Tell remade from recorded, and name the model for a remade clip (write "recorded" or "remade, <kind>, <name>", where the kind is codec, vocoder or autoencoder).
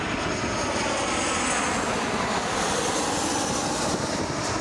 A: recorded